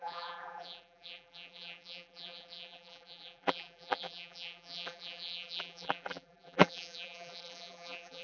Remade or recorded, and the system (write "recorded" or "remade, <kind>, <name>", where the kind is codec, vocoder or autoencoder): remade, vocoder, BigVGAN v2